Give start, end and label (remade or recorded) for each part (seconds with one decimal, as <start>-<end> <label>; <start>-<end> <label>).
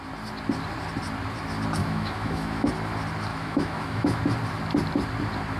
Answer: 0.0-1.8 recorded; 1.8-2.7 remade; 2.7-3.3 recorded; 3.3-4.2 remade; 4.2-5.6 recorded